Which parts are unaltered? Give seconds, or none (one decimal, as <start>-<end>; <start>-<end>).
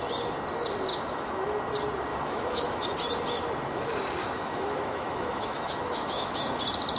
0.0-0.9; 1.6-2.1; 2.8-4.2; 6.6-7.0